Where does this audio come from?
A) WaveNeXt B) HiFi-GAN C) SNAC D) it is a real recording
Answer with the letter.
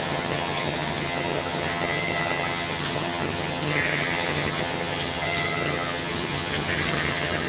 B